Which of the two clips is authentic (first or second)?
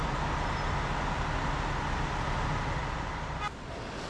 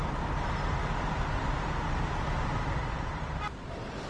first